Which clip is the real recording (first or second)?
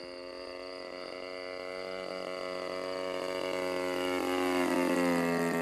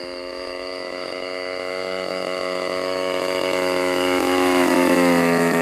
first